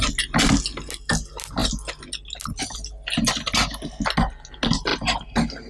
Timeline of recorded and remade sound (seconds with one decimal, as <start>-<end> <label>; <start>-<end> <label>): 0.0-5.7 recorded